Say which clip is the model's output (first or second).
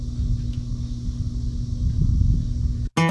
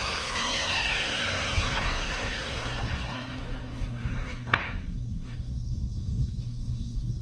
second